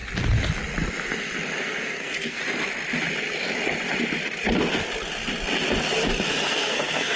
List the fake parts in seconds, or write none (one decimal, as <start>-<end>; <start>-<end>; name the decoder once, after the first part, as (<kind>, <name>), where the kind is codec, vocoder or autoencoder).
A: 1.6-2.4 (codec, SNAC); 6.5-7.2